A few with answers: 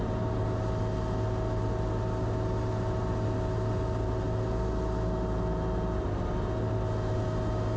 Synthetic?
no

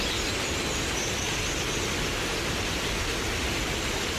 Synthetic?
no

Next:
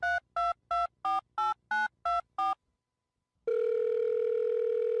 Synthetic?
no